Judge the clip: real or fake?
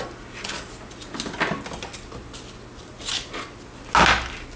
real